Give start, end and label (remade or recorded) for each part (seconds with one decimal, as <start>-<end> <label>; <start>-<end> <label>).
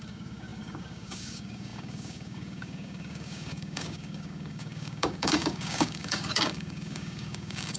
0.0-7.8 remade